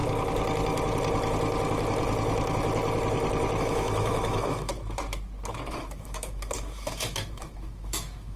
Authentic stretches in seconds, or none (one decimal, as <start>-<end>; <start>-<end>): 0.0-3.6; 4.7-5.7